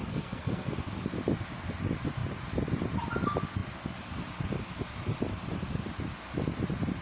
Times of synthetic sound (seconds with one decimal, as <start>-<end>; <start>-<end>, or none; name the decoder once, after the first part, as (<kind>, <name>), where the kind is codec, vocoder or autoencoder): 0.0-0.7 (codec, SNAC)